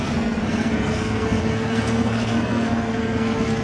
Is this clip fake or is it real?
fake